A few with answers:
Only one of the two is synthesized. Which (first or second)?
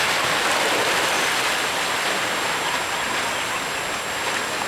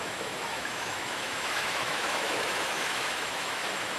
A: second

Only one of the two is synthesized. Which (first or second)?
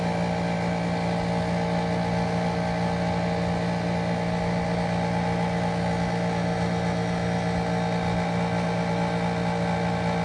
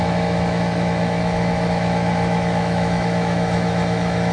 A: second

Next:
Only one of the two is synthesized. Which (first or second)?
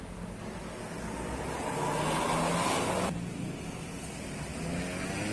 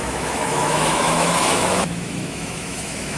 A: second